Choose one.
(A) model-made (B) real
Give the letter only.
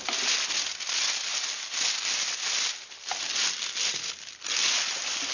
B